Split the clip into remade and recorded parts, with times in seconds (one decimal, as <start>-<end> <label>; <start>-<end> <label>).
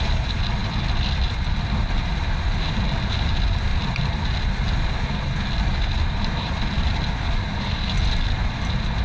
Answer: 0.0-9.0 recorded